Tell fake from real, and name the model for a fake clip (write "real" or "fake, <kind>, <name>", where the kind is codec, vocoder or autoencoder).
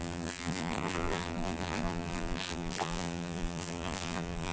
fake, vocoder, BigVGAN v2